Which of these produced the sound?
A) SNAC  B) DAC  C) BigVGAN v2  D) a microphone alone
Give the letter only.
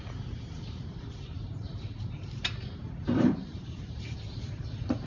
C